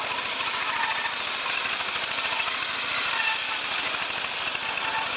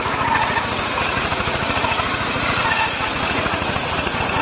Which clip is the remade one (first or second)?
second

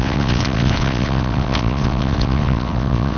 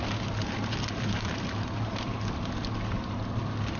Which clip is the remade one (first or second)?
first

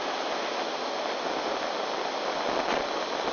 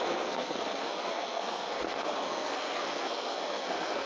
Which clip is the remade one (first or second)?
second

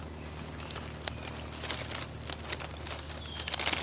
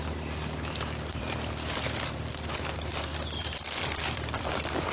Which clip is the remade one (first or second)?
second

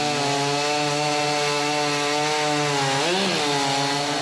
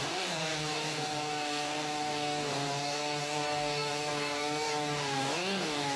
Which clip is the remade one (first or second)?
second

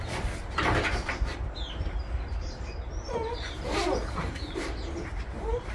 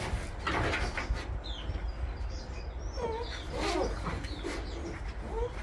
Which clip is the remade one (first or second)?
first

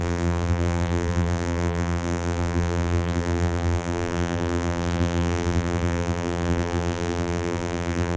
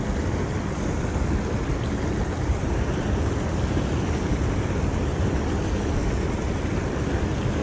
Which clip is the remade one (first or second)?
first